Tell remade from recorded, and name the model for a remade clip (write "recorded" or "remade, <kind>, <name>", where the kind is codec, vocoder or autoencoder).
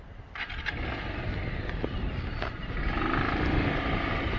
recorded